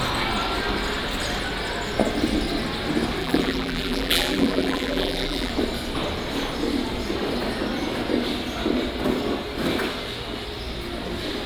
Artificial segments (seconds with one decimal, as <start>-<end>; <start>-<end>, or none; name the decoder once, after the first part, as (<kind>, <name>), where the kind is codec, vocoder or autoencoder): 3.2-5.5 (vocoder, BigVGAN v2)